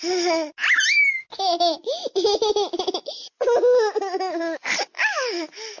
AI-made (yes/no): no